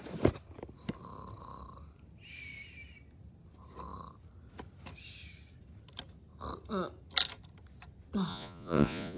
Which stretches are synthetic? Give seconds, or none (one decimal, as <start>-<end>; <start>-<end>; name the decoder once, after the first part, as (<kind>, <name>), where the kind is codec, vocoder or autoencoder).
8.3-9.2 (vocoder, Vocos)